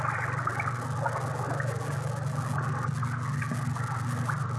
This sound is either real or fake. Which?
real